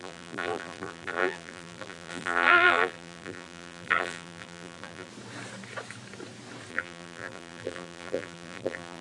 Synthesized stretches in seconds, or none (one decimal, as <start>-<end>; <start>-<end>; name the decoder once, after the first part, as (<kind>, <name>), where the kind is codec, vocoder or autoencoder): 0.0-5.1 (vocoder, BigVGAN v2); 6.7-9.0